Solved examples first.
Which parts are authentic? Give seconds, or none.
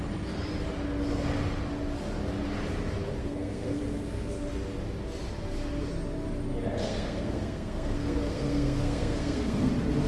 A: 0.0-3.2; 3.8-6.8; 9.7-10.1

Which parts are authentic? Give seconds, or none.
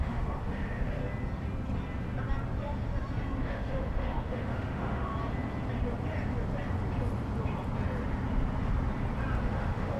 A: 1.0-3.4; 5.1-9.4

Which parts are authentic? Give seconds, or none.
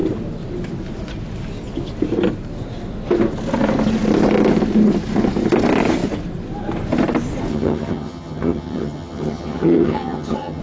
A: 0.0-7.5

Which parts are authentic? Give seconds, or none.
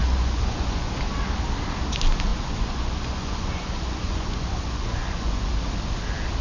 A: 1.0-2.3; 5.5-6.4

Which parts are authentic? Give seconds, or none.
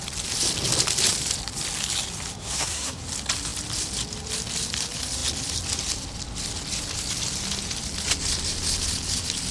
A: 0.0-2.4; 3.0-9.5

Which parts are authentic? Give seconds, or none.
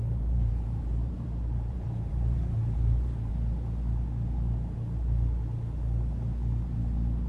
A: 3.3-7.3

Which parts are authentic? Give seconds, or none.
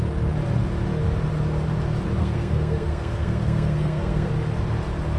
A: 0.0-2.2; 4.3-5.2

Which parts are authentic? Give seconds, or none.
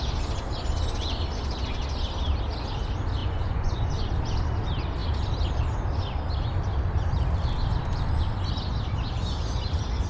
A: 0.0-3.2; 3.9-10.1